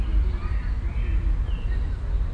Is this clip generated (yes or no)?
no